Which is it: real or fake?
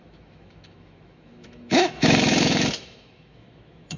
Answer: fake